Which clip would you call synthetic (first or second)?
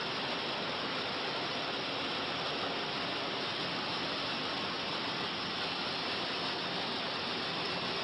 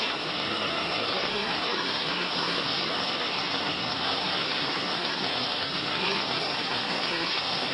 second